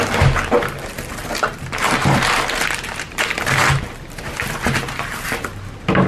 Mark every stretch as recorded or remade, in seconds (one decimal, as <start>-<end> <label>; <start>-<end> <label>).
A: 0.0-1.2 recorded; 1.2-3.9 remade; 3.9-6.1 recorded